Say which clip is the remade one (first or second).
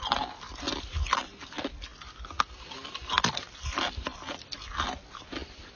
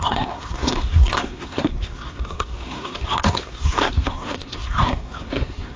second